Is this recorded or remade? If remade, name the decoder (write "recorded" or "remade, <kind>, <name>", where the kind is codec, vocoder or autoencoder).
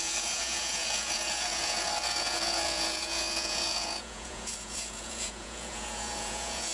remade, vocoder, Vocos